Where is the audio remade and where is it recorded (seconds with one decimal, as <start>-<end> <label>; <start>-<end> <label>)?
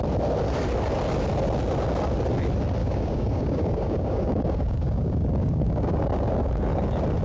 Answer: 0.0-2.8 recorded; 2.8-6.3 remade; 6.3-7.2 recorded